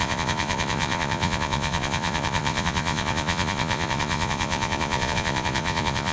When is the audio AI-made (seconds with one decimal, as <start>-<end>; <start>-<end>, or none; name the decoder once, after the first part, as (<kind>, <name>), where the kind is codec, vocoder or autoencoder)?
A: 0.0-6.1 (vocoder, Vocos)